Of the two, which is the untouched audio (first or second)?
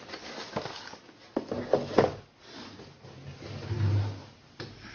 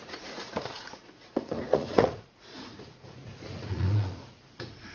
first